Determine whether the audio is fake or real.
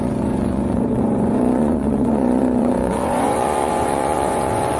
fake